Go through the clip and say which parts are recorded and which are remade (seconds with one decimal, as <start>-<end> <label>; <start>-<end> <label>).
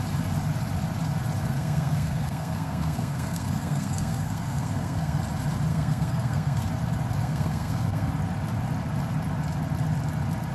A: 0.0-1.4 recorded; 1.4-5.2 remade; 5.2-5.7 recorded; 5.7-6.7 remade; 6.7-7.2 recorded; 7.2-8.1 remade; 8.1-10.5 recorded